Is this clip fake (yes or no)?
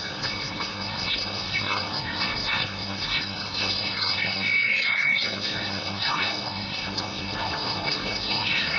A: yes